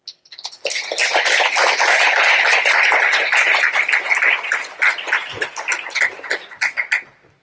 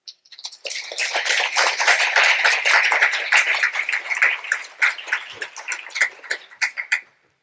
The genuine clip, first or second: first